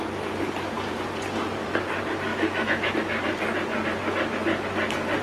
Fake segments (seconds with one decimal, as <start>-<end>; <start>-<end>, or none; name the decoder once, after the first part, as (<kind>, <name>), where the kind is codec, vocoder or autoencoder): 2.3-2.9 (autoencoder, DAC-VAE)